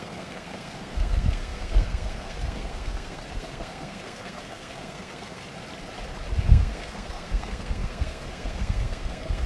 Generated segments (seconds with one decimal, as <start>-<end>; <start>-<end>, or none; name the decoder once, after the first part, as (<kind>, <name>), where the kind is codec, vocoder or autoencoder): 0.0-5.4 (codec, SNAC); 6.4-9.5